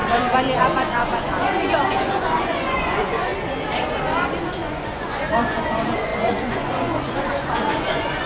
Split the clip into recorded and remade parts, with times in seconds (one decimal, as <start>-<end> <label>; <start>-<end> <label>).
0.0-0.6 recorded; 0.6-3.3 remade; 3.3-4.5 recorded; 4.5-8.3 remade